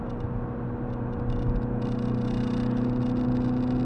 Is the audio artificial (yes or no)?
no